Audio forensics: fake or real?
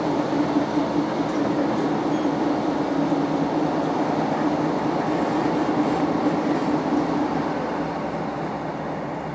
real